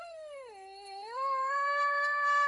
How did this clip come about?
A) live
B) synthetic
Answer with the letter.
B